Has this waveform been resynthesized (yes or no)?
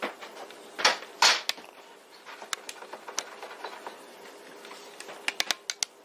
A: no